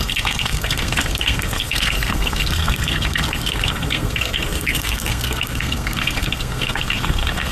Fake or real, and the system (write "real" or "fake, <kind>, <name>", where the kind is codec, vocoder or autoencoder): fake, codec, SNAC